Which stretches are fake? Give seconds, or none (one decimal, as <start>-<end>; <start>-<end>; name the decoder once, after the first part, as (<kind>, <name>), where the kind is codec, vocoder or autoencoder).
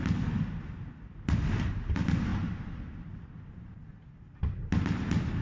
2.3-3.7 (vocoder, BigVGAN v2)